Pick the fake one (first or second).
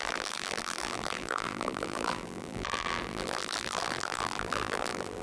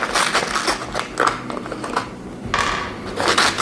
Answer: first